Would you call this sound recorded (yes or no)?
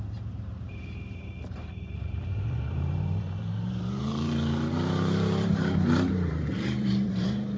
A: no